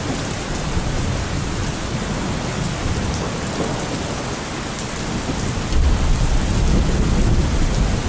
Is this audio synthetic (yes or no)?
no